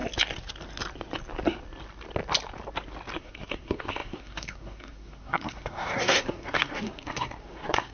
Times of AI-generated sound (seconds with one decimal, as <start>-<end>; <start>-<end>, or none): 3.2-7.9